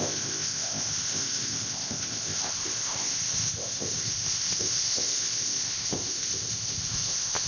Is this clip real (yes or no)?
no